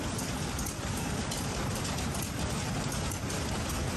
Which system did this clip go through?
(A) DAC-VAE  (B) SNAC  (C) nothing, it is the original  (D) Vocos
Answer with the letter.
C